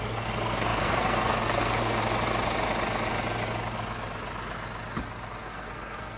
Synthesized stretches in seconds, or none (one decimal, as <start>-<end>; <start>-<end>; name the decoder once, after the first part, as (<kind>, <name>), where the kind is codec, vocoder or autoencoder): 0.0-2.0 (codec, SNAC); 5.4-6.2